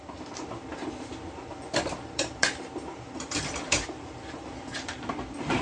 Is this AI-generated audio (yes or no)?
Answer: yes